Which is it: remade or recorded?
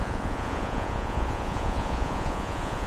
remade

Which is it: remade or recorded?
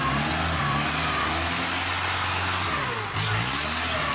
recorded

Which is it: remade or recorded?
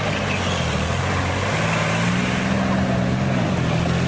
recorded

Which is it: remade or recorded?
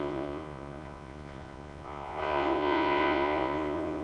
remade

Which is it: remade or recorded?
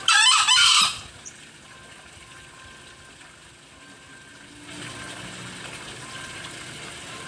recorded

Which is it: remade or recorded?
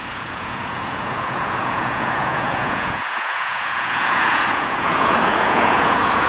remade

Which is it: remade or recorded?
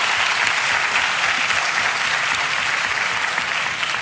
recorded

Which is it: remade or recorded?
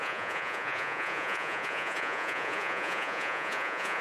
remade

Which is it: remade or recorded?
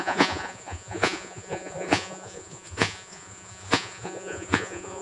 remade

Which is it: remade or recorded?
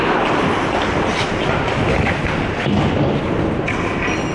recorded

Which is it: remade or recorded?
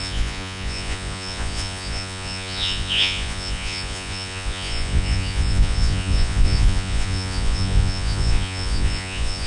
remade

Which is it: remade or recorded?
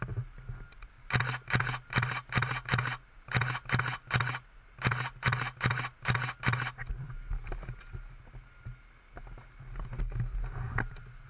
recorded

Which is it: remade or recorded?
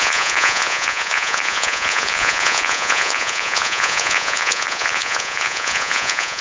remade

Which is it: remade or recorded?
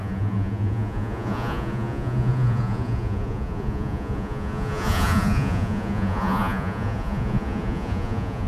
remade